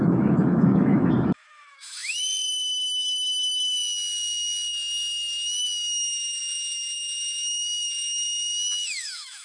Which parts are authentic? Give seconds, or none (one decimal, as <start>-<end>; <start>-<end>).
none